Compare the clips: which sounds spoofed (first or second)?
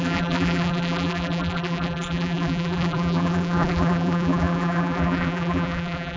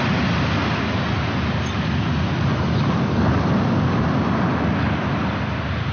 first